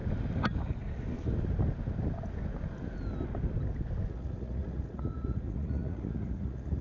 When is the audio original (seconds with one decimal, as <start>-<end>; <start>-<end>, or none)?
0.0-4.1